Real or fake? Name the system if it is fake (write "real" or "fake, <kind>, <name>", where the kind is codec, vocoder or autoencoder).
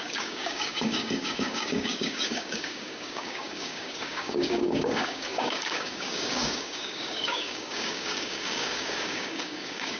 fake, codec, DAC